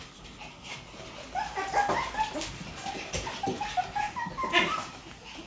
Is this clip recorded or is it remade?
recorded